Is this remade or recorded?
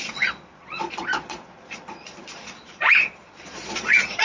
remade